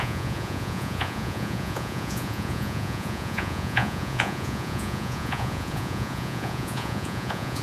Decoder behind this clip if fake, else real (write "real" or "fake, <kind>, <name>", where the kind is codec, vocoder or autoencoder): fake, vocoder, Vocos